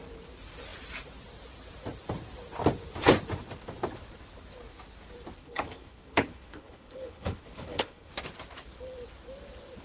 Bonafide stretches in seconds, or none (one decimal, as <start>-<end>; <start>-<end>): 0.0-5.4; 8.1-9.8